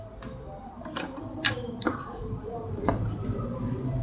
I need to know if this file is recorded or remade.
remade